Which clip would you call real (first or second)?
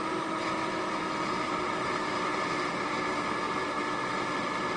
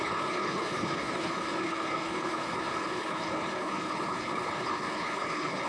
first